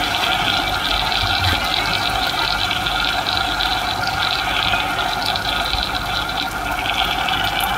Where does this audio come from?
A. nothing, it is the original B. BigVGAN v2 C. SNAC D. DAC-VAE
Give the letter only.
A